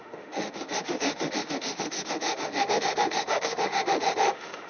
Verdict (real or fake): fake